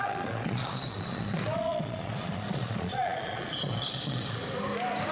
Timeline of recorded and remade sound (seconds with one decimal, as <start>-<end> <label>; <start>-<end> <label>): 0.0-4.4 remade; 4.4-5.1 recorded

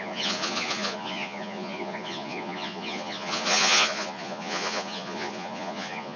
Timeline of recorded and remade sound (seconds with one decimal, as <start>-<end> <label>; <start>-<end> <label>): 0.0-6.2 remade

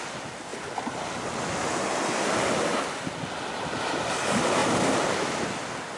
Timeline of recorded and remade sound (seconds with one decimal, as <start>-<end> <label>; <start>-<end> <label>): 0.0-6.0 recorded

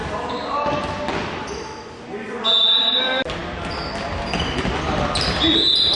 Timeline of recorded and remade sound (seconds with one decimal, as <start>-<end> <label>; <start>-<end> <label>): 0.0-5.9 recorded